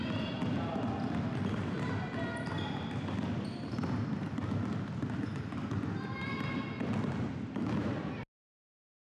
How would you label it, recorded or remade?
recorded